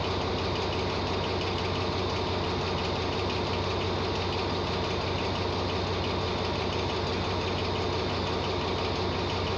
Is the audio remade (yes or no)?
no